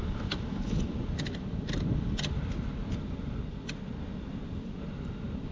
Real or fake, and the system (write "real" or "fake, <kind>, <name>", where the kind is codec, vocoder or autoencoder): real